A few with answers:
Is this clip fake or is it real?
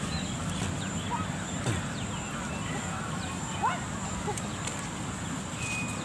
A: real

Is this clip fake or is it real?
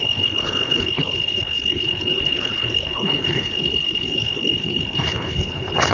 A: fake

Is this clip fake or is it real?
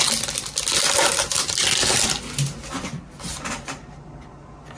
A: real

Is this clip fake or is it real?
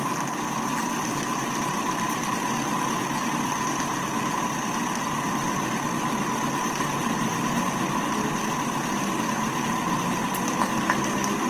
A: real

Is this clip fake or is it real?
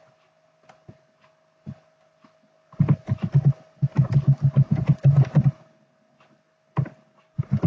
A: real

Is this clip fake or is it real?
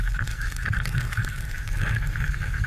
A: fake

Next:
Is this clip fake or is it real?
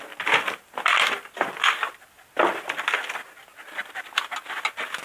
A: real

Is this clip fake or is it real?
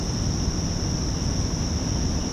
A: real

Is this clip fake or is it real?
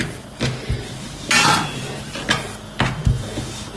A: real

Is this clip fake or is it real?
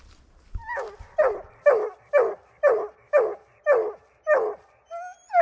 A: real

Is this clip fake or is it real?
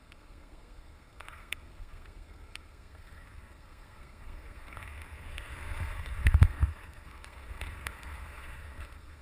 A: fake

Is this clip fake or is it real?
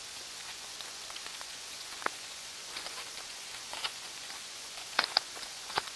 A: fake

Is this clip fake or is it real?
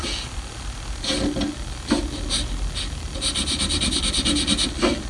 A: real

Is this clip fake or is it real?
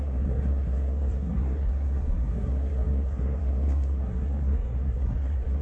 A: fake